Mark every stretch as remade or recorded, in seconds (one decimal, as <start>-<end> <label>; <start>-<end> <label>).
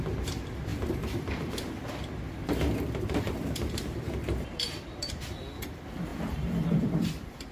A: 0.0-7.5 remade